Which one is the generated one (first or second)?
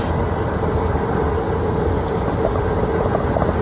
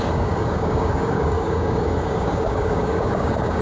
second